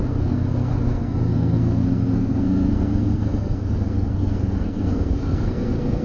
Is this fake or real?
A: fake